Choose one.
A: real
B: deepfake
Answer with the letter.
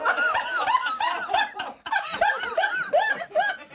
B